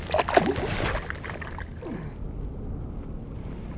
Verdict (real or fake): real